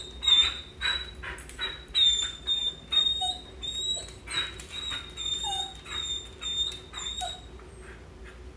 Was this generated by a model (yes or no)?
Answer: no